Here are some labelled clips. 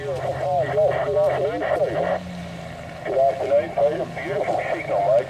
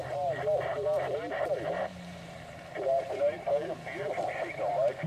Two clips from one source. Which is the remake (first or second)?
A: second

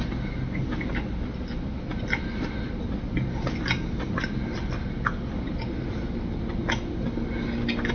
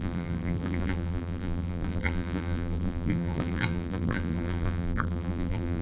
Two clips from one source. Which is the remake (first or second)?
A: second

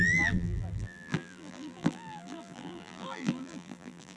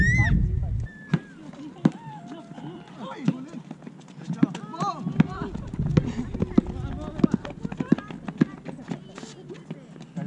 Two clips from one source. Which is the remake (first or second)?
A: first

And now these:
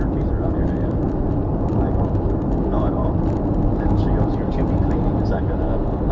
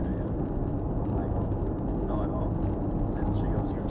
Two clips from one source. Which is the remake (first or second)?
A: first